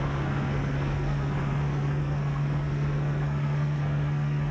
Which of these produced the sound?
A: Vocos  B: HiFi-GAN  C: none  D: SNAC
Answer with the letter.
D